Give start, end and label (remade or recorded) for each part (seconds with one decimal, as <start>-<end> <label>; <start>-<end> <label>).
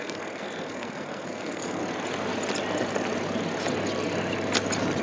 0.0-1.8 remade; 1.8-5.0 recorded